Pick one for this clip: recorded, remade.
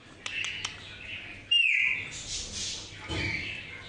recorded